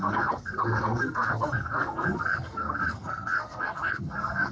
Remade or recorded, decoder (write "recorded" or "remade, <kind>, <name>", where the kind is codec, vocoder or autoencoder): remade, codec, SNAC